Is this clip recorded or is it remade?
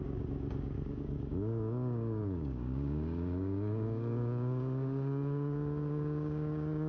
remade